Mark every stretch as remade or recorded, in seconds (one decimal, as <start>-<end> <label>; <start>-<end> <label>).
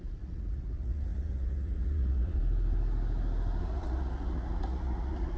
0.0-2.4 remade; 2.4-3.6 recorded; 3.6-5.4 remade